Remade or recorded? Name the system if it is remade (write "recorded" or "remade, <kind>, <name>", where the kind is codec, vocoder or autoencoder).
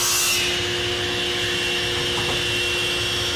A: recorded